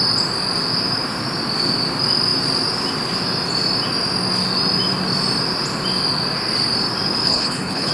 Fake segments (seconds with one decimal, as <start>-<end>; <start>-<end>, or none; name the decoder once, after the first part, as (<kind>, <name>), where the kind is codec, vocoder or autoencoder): 7.2-7.9 (codec, HILCodec)